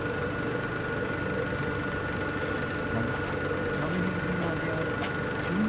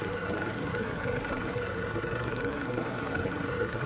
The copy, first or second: second